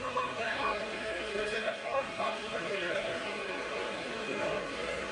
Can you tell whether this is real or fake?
fake